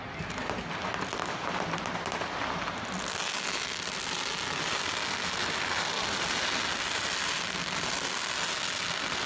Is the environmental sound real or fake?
real